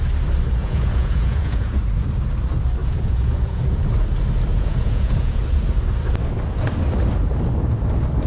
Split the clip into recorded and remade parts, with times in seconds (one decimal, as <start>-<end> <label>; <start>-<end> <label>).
0.0-0.6 recorded; 0.6-1.8 remade; 1.8-2.8 recorded; 2.8-3.9 remade; 3.9-4.5 recorded; 4.5-5.4 remade; 5.4-8.3 recorded